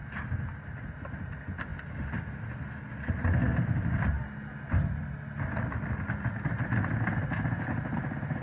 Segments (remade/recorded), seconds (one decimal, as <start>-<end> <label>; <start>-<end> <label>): 0.0-8.4 recorded